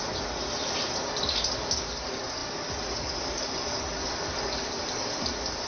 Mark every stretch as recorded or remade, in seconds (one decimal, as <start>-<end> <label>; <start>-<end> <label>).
0.0-5.7 recorded